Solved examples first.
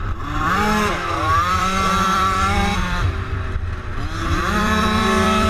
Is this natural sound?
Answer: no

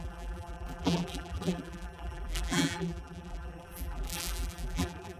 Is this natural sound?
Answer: no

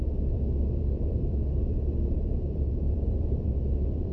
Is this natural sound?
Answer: no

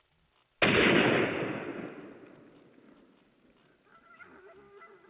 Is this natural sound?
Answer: yes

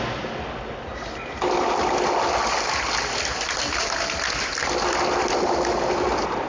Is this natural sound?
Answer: yes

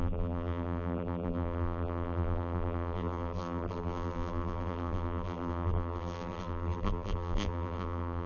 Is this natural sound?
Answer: no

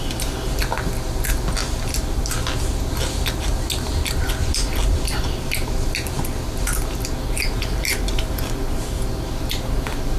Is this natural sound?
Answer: yes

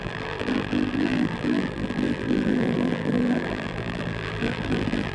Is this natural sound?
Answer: no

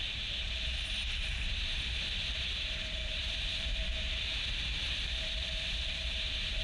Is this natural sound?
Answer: no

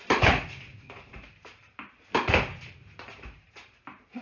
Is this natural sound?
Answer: no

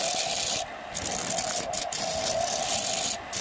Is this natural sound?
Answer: yes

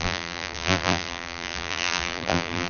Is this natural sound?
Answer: no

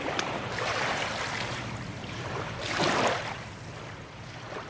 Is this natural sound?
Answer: no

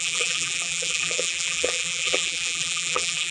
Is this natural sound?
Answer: no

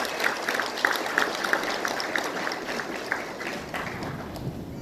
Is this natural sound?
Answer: yes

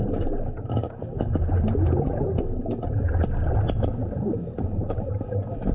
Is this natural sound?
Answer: yes